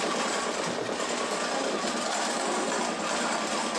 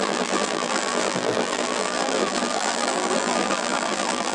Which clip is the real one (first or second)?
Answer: first